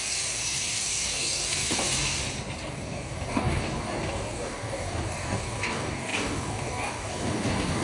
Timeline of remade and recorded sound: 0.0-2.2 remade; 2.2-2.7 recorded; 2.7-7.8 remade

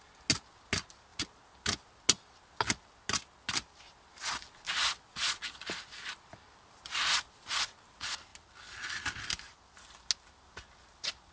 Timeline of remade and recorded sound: 0.0-11.3 recorded

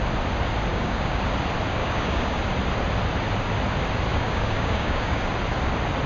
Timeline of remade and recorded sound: 0.0-0.7 recorded; 0.7-1.2 remade; 1.2-1.8 recorded; 1.8-2.4 remade; 2.4-4.1 recorded; 4.1-5.3 remade; 5.3-6.1 recorded

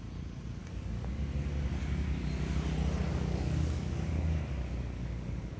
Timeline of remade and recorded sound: 0.0-0.6 recorded; 0.6-2.7 remade; 2.7-3.1 recorded; 3.1-5.6 remade

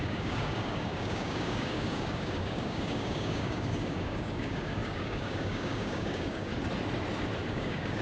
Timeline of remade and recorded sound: 0.0-6.5 remade; 6.5-7.5 recorded; 7.5-8.0 remade

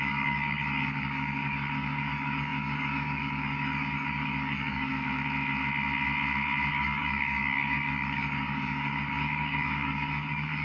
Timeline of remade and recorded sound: 0.0-4.9 remade; 4.9-6.7 recorded; 6.7-10.6 remade

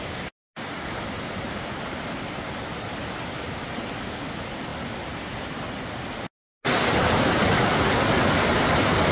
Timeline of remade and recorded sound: 0.0-9.1 recorded

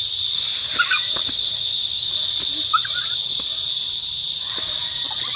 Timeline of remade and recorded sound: 0.0-1.2 recorded; 1.2-2.1 remade; 2.1-5.4 recorded